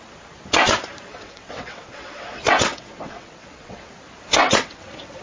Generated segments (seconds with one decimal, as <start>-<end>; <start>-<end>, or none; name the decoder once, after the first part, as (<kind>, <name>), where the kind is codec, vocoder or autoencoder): 1.1-3.9 (vocoder, WaveNeXt); 4.4-5.2